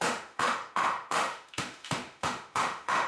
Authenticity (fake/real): fake